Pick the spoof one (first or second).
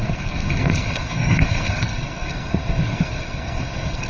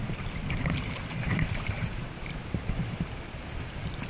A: first